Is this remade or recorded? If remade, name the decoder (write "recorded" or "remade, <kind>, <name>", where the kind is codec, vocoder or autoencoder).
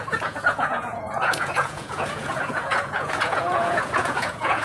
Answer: remade, vocoder, Vocos